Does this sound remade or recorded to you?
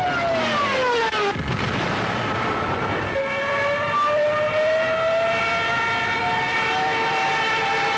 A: recorded